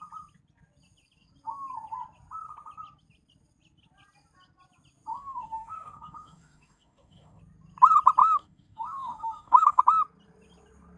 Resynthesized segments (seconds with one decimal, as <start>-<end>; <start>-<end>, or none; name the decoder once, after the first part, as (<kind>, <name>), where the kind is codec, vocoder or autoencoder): 5.1-7.4 (autoencoder, DAC-VAE); 8.2-9.8